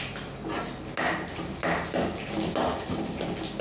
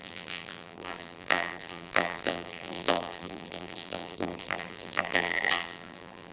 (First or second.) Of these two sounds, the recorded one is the first